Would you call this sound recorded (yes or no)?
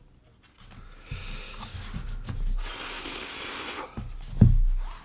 yes